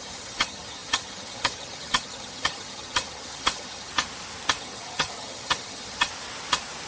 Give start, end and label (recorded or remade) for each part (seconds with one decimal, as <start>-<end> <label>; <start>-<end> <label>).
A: 0.0-3.9 remade; 3.9-4.6 recorded; 4.6-6.1 remade; 6.1-6.9 recorded